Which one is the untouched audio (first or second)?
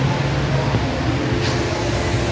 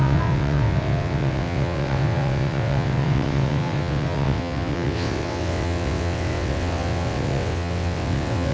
first